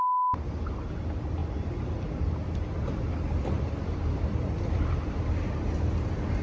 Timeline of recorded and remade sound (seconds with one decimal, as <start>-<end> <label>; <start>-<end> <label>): 0.0-1.4 recorded; 1.4-5.2 remade; 5.2-6.4 recorded